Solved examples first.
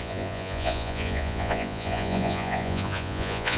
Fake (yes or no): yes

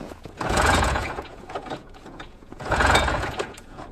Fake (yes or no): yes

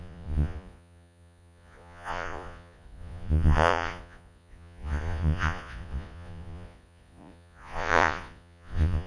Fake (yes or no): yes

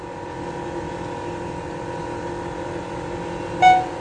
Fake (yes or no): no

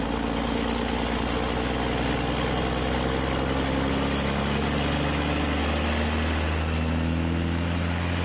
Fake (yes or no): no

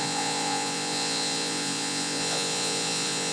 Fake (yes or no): yes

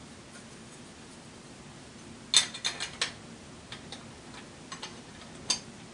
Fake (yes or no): no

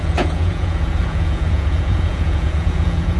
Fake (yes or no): yes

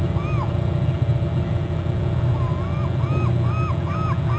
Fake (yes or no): no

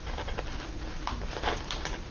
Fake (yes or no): no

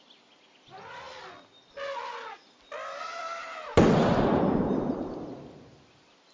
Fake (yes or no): no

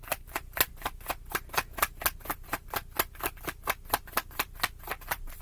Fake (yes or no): no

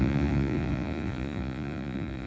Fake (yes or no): yes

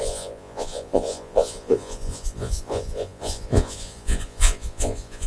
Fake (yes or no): yes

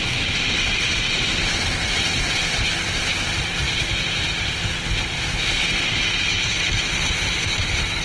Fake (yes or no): no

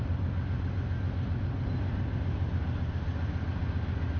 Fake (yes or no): no